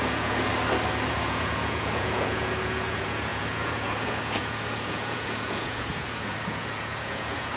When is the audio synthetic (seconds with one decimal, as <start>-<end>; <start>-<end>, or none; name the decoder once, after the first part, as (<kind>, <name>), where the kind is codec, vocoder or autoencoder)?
0.0-0.5 (vocoder, Vocos); 1.1-7.6